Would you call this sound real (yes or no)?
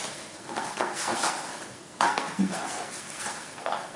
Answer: no